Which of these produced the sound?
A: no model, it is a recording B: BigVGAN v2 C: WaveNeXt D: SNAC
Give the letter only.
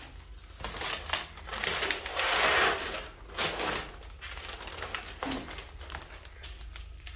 A